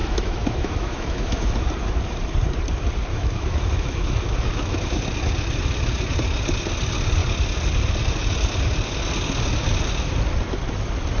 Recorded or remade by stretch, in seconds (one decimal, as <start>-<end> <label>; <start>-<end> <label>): 0.0-1.5 remade; 1.5-3.1 recorded; 3.1-5.0 remade; 5.0-11.2 recorded